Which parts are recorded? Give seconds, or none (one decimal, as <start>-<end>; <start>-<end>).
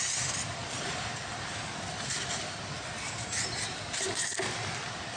0.0-5.2